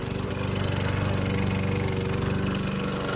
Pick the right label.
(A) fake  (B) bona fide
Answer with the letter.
B